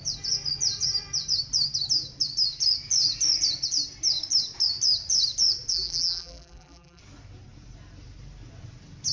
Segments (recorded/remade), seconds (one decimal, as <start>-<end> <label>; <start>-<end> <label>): 0.0-5.7 recorded; 5.7-7.0 remade; 7.0-9.1 recorded

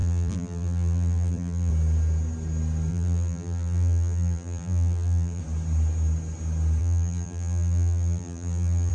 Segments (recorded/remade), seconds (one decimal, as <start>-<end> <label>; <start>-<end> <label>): 0.0-1.7 remade; 1.7-2.9 recorded; 2.9-5.4 remade; 5.4-6.8 recorded; 6.8-8.9 remade

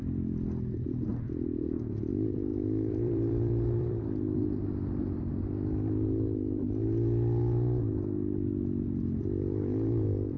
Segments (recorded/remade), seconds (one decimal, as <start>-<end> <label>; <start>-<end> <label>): 0.0-1.1 recorded; 1.1-2.1 remade; 2.1-2.5 recorded; 2.5-5.2 remade; 5.2-10.4 recorded

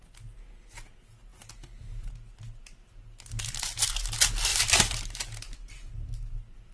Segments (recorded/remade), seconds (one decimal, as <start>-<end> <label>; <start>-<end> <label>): 0.0-4.5 recorded; 4.5-5.0 remade; 5.0-6.7 recorded